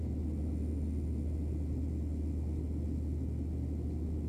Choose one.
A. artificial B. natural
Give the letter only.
B